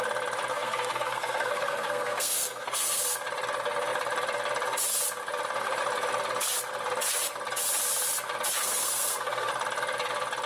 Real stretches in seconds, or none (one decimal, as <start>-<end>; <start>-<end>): 0.0-0.5; 3.0-8.6; 9.5-10.5